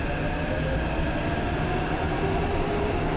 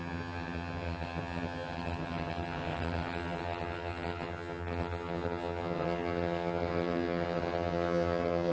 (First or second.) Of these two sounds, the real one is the first